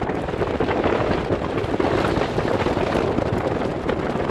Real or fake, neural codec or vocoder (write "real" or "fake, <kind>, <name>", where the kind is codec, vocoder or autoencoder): real